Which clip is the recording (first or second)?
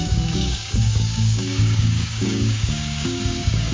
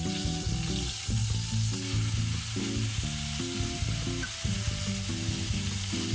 second